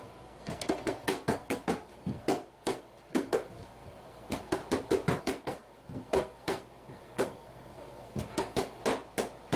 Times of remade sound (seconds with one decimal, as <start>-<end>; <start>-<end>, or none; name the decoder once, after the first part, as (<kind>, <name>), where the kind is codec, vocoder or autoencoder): 0.0-4.6 (codec, SNAC); 5.2-8.8